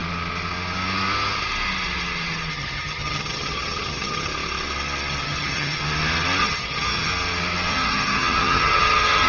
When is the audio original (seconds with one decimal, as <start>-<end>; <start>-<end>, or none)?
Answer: 0.0-2.5; 4.3-5.2; 5.8-6.4; 7.1-7.7